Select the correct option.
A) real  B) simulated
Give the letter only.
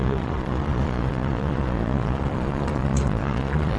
B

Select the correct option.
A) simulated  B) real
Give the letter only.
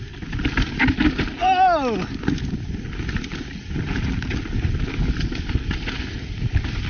B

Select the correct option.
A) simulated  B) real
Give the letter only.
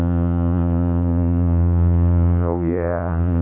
A